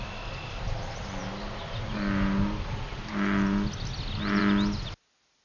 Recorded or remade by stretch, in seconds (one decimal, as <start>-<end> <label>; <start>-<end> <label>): 0.0-5.4 recorded